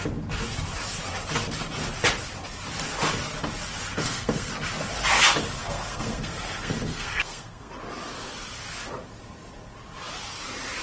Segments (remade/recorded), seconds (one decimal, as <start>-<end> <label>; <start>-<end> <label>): 0.0-4.0 recorded; 4.0-4.5 remade; 4.5-5.6 recorded; 5.6-7.7 remade; 7.7-10.8 recorded